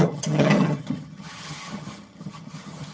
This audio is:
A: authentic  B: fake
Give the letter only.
B